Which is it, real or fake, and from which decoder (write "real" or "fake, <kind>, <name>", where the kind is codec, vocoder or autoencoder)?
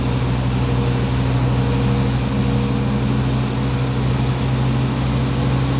real